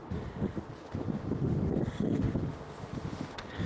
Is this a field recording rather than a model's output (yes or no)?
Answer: no